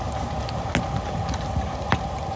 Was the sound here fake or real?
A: real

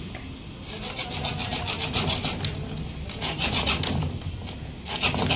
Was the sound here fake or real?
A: real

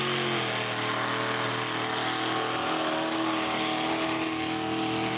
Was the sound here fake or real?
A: real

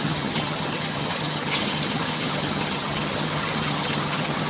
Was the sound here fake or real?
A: fake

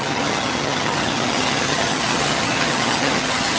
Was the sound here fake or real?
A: fake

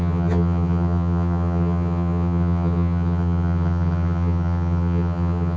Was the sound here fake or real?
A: fake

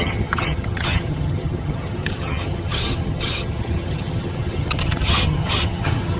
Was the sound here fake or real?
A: fake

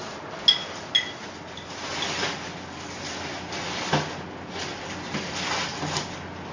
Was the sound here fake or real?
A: real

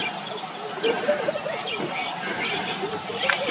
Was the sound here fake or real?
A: real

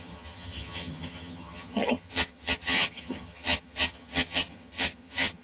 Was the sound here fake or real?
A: fake